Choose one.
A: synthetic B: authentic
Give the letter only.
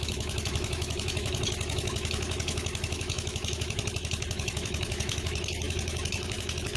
A